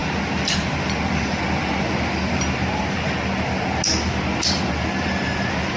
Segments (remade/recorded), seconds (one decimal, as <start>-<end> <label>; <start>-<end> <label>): 0.0-5.8 recorded